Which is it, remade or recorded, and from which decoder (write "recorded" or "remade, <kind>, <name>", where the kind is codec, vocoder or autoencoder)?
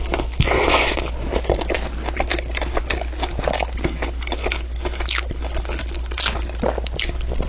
recorded